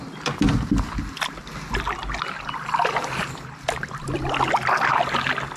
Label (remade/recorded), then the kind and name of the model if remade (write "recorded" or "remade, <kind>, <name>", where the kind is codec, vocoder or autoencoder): recorded